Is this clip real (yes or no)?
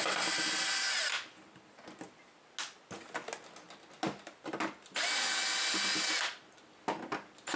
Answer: yes